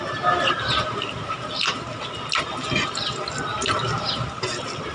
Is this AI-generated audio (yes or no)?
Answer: no